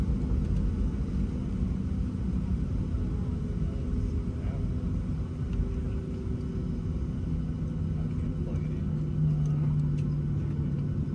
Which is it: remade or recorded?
recorded